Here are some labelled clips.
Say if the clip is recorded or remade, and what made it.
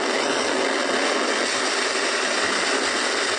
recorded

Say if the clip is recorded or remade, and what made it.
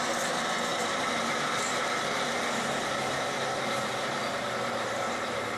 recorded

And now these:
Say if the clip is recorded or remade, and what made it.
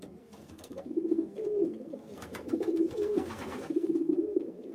remade, codec, SNAC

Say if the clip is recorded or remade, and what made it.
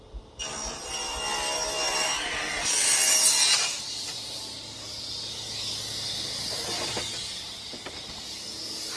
recorded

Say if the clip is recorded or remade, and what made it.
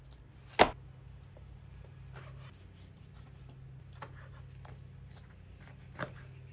recorded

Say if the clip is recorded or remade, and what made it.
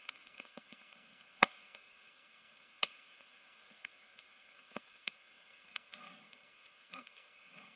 remade, codec, SNAC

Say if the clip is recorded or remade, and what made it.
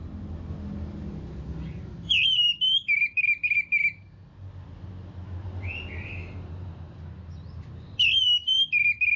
recorded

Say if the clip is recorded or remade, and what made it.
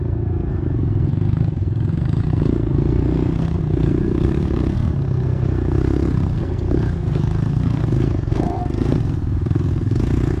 remade, codec, SNAC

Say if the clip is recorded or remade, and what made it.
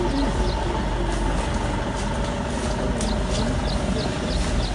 recorded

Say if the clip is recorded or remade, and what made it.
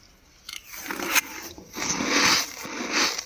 recorded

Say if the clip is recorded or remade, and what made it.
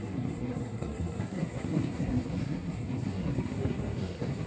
remade, codec, SNAC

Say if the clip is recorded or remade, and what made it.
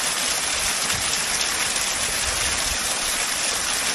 recorded